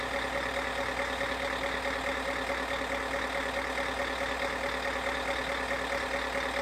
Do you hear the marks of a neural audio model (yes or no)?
no